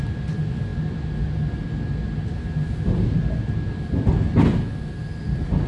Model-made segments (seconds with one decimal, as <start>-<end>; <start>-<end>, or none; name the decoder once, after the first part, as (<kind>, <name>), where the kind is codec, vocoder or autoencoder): none